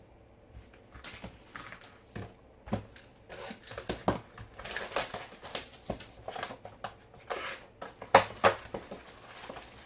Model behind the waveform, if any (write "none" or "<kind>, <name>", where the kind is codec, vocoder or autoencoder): none